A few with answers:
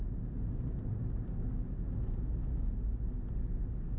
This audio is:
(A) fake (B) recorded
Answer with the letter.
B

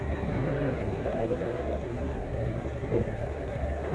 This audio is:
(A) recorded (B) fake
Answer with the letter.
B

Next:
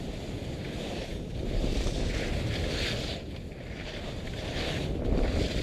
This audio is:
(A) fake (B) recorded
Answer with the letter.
B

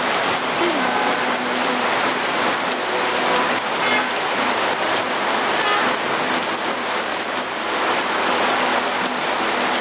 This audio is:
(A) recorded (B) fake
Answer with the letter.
A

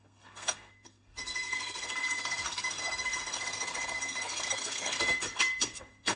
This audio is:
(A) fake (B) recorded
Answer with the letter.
A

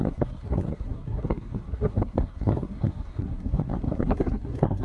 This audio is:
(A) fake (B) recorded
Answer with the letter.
A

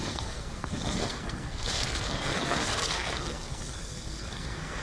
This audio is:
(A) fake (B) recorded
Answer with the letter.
A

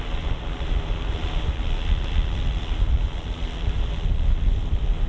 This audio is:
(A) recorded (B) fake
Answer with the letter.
A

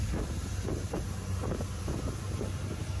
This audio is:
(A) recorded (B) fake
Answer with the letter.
A